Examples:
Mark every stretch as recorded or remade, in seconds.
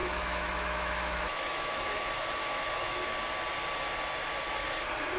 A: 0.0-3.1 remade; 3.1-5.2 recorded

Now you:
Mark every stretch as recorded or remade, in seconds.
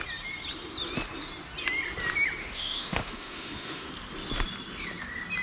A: 0.0-2.4 recorded; 2.4-3.9 remade; 3.9-5.4 recorded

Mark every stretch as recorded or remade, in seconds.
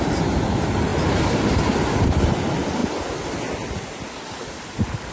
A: 0.0-5.1 recorded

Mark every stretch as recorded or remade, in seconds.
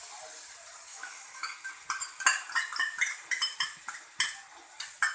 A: 0.0-0.9 recorded; 0.9-1.7 remade; 1.7-5.1 recorded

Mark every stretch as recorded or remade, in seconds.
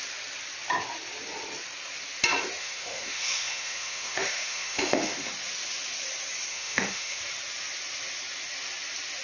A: 0.0-2.6 recorded; 2.6-5.3 remade; 5.3-6.5 recorded; 6.5-7.2 remade; 7.2-9.2 recorded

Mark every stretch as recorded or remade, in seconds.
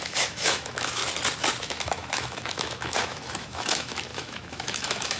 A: 0.0-1.0 remade; 1.0-1.6 recorded; 1.6-5.2 remade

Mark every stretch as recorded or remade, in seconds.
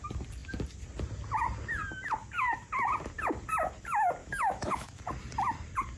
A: 0.0-4.2 recorded; 4.2-5.0 remade; 5.0-6.0 recorded